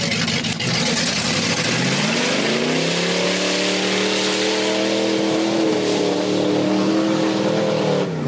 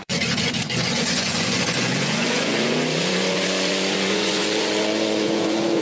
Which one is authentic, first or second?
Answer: first